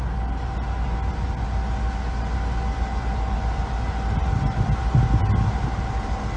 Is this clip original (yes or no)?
yes